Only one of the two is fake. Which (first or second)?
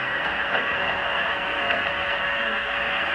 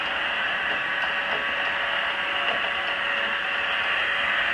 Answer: first